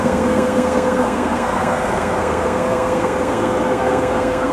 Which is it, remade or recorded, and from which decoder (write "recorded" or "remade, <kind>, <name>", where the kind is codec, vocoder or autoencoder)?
remade, codec, SNAC